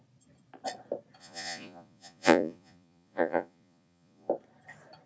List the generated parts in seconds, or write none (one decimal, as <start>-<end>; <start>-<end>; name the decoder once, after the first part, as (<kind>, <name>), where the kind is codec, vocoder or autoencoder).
1.2-4.3 (vocoder, Vocos)